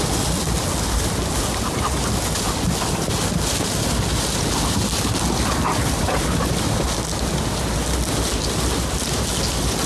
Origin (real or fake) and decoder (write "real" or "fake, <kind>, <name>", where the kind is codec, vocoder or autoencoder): real